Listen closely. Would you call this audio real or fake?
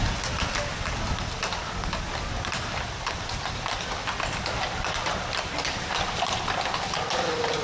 real